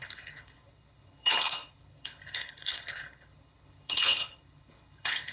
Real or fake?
fake